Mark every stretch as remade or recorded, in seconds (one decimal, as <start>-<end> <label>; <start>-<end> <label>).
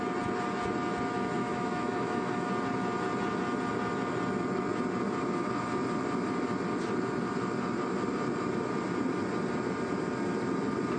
0.0-1.4 recorded; 1.4-2.5 remade; 2.5-11.0 recorded